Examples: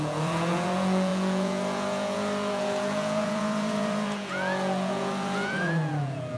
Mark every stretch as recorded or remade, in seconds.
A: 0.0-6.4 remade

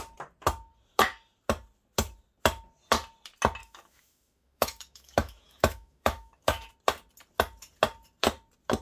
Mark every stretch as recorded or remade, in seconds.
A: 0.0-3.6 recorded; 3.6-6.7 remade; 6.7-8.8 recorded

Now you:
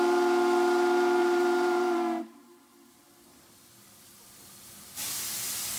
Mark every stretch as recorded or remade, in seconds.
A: 0.0-1.2 recorded; 1.2-3.0 remade; 3.0-5.8 recorded

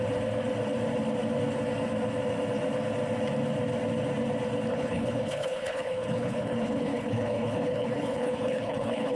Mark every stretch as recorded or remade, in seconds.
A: 0.0-4.7 recorded; 4.7-9.2 remade